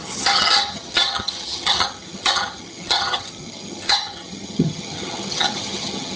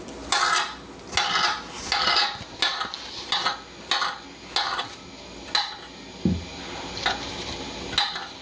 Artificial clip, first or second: first